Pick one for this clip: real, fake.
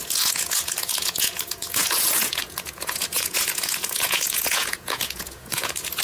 fake